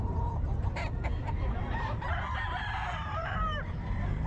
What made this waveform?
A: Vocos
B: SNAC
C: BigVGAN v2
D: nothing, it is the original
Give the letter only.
C